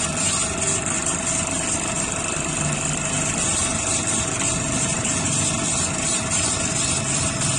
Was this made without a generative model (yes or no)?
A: yes